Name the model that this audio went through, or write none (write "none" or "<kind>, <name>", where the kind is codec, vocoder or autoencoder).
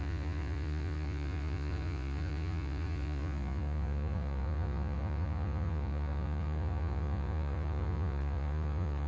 vocoder, Vocos